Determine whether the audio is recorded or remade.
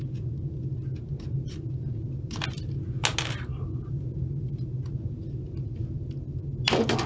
recorded